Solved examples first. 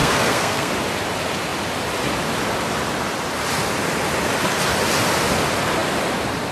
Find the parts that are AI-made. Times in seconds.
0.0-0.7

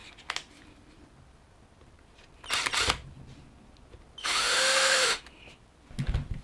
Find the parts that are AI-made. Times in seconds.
4.2-5.2

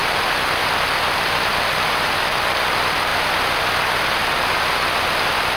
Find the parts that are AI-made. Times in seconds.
none

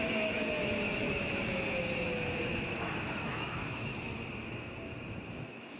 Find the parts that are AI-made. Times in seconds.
0.0-3.9; 5.3-5.8

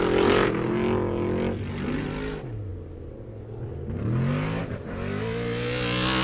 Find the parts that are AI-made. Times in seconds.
none

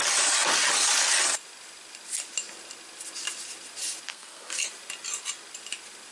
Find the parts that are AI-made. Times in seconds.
4.1-4.7

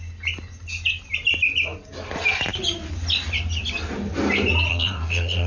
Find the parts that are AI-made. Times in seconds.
4.7-5.5

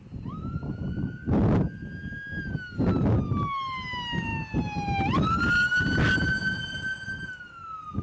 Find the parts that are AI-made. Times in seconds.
none